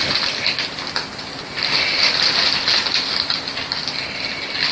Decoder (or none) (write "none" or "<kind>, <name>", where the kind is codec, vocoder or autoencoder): none